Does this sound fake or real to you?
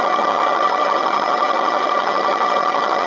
fake